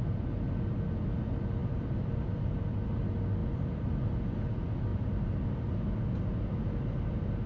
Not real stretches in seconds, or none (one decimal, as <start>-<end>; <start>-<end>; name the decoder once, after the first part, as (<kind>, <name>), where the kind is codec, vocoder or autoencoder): 1.6-2.6 (vocoder, BigVGAN v2); 3.4-4.1; 4.9-5.8

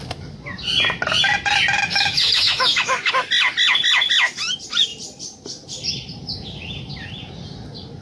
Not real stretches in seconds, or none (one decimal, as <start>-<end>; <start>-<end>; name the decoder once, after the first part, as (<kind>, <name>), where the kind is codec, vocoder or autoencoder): 1.8-3.1 (autoencoder, DAC-VAE)

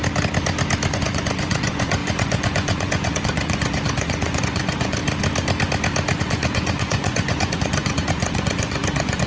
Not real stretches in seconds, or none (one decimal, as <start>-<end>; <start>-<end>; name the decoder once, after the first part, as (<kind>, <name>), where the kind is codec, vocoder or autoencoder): 0.9-5.0 (vocoder, Vocos); 6.2-9.3

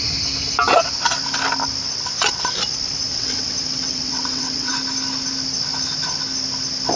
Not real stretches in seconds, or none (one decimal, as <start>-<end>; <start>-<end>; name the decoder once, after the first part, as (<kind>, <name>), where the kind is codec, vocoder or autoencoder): 3.1-4.7 (vocoder, WaveNeXt)

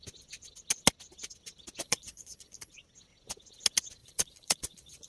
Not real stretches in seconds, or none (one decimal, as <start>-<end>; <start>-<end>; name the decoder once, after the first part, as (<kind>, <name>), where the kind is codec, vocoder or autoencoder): 1.8-2.7 (vocoder, Vocos); 4.0-5.1

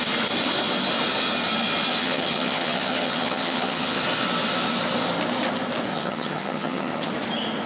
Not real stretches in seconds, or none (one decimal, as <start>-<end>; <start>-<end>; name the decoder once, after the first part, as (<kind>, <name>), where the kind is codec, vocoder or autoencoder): 2.0-4.0 (vocoder, HiFi-GAN); 5.9-7.1

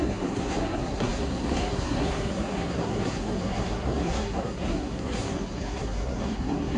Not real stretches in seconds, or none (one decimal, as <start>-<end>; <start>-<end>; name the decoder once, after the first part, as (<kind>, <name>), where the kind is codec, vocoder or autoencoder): 0.0-6.8 (codec, SNAC)

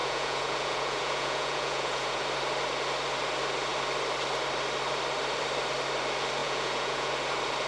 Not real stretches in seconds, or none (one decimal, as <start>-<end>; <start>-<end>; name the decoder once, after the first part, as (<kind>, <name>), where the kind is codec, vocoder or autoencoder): 0.0-2.2 (vocoder, Vocos); 6.4-7.1